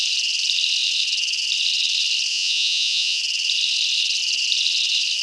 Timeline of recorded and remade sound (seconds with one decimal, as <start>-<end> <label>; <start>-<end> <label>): 0.0-2.3 recorded; 2.3-3.2 remade; 3.2-5.2 recorded